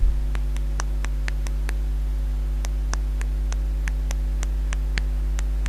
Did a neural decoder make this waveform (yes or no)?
no